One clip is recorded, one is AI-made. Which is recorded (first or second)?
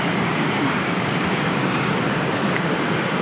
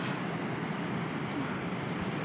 second